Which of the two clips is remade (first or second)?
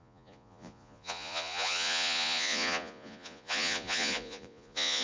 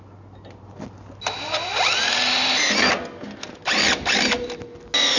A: first